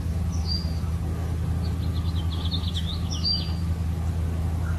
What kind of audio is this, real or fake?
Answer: real